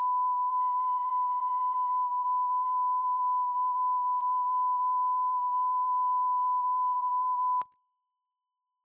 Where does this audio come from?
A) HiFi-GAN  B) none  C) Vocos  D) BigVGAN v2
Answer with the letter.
D